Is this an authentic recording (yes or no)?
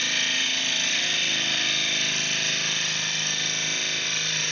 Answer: yes